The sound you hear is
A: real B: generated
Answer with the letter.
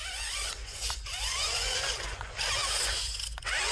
B